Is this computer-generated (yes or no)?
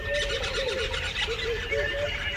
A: no